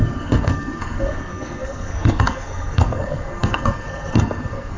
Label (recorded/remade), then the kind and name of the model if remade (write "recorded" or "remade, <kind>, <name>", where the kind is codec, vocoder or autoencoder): remade, codec, SNAC